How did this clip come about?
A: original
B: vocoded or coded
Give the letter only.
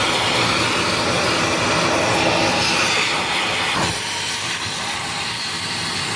A